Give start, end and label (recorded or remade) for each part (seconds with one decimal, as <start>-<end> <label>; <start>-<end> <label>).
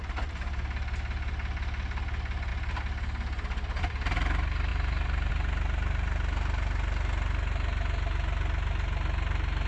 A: 0.0-4.7 recorded; 4.7-5.3 remade; 5.3-9.7 recorded